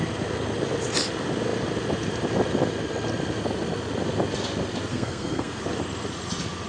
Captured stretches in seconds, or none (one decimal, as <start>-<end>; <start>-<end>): 0.0-4.9; 5.6-6.7